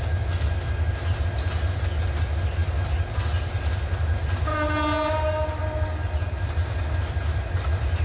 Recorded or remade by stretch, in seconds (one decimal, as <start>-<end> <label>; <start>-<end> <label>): 0.0-8.0 recorded